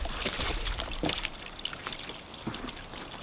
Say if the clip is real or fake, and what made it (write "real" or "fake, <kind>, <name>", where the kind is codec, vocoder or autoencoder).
real